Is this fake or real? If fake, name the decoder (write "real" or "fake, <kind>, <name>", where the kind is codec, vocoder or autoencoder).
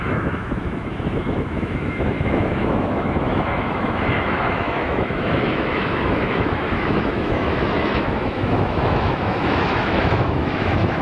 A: fake, autoencoder, DAC-VAE